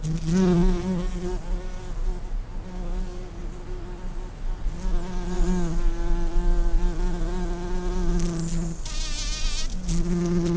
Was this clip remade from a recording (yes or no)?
no